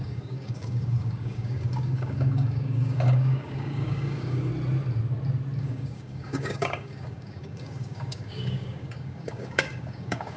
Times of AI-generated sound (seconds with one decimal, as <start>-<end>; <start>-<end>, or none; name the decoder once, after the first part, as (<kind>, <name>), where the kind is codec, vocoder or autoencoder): 0.0-4.5 (codec, DAC); 5.6-10.4